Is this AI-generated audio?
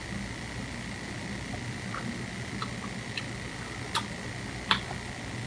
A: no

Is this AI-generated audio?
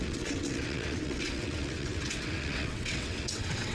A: yes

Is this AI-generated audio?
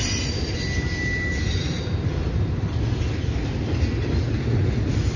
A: no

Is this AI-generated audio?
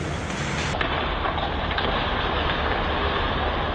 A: no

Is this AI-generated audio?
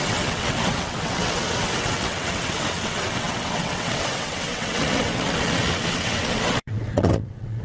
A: yes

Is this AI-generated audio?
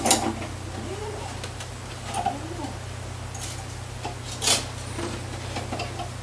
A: no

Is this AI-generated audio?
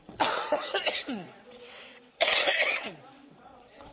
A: yes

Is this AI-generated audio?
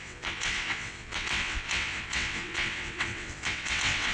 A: yes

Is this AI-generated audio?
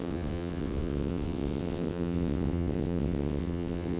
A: yes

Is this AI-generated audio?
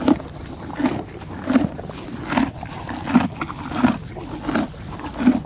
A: no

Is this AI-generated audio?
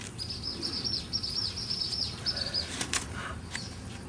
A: no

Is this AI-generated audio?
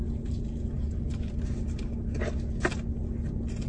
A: no